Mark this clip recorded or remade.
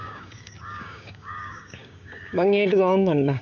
remade